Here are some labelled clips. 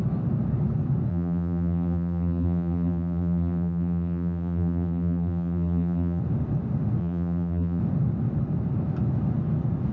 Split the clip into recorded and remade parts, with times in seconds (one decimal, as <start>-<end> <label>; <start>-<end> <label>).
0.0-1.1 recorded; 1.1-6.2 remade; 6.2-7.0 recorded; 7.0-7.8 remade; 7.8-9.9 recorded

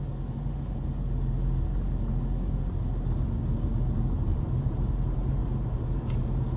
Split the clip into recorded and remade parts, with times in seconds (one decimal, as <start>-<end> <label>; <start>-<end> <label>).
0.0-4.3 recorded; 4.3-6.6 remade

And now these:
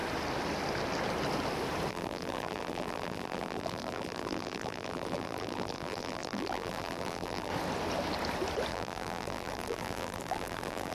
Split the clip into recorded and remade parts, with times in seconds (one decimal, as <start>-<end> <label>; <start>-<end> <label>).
0.0-1.9 recorded; 1.9-7.5 remade; 7.5-8.7 recorded; 8.7-10.9 remade